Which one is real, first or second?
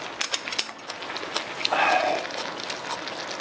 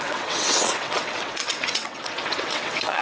first